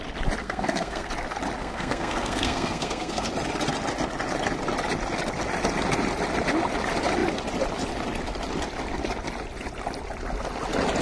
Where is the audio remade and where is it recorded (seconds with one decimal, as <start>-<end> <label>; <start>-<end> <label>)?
0.0-0.4 recorded; 0.4-1.1 remade; 1.1-1.6 recorded; 1.6-3.3 remade; 3.3-11.0 recorded